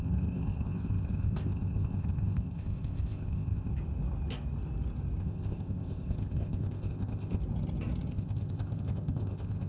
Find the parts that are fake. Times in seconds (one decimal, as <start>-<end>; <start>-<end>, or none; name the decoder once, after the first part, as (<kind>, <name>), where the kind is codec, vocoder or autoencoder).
0.0-3.7 (codec, ZipCodec); 5.2-7.4; 8.1-9.7